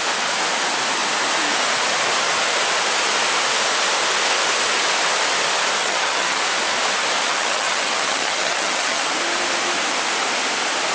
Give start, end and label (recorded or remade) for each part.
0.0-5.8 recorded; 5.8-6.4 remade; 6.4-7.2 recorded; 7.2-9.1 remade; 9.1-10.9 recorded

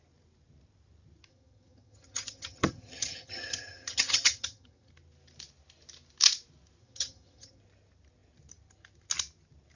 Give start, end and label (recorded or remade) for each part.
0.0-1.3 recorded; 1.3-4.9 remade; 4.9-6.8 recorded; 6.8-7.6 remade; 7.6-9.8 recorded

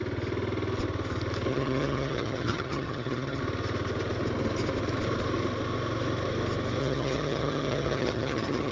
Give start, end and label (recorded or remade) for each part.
0.0-1.5 recorded; 1.5-3.4 remade; 3.4-6.8 recorded; 6.8-8.7 remade